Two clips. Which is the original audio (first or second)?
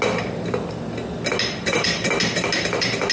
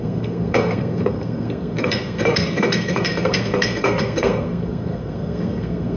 first